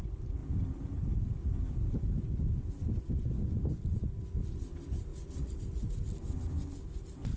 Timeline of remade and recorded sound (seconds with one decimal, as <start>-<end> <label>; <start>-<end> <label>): 0.0-7.4 recorded